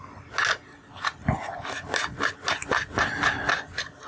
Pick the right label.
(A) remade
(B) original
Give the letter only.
B